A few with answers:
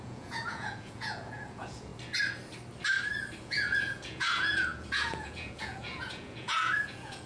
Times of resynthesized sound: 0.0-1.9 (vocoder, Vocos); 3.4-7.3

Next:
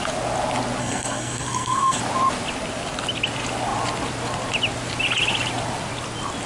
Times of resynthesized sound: 0.8-2.0 (codec, SNAC)

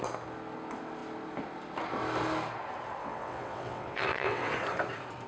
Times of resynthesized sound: 3.0-4.5 (vocoder, WaveNeXt)

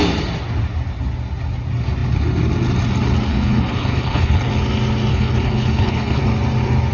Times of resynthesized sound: 3.3-4.5 (codec, HILCodec); 5.1-6.2

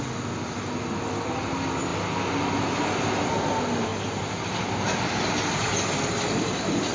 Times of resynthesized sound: none